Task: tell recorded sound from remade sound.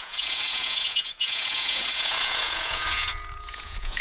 remade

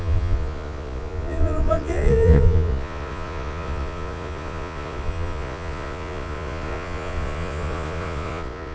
remade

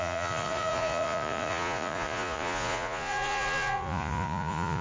remade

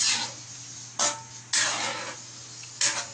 recorded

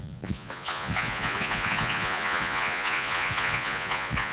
remade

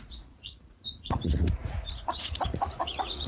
remade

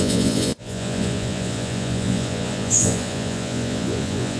remade